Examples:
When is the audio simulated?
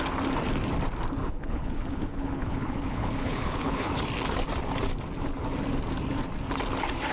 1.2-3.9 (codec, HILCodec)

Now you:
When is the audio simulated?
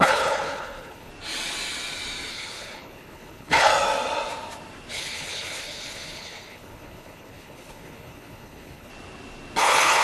0.0-1.1 (codec, HILCodec); 2.3-3.7; 4.9-8.9; 9.6-10.0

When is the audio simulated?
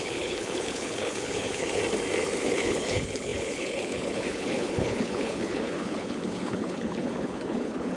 0.0-1.8 (codec, HILCodec); 2.4-8.0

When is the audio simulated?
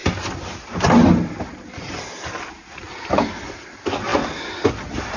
none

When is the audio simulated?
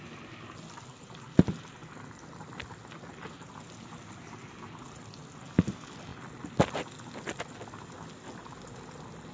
none